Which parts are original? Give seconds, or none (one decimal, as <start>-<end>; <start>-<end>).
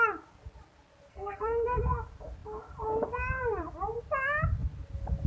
0.0-1.1; 1.8-5.3